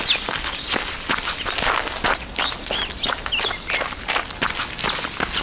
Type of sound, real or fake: real